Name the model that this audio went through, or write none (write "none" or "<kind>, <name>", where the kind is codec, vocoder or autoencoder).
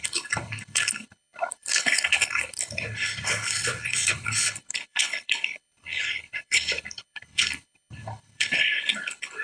codec, HILCodec